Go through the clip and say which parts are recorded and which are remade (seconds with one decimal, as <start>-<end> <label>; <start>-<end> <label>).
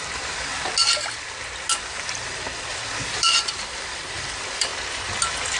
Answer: 0.0-0.5 remade; 0.5-1.9 recorded; 1.9-4.7 remade; 4.7-5.6 recorded